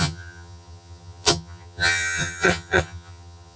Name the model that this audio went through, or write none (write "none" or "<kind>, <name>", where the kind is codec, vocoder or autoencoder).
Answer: vocoder, HiFi-GAN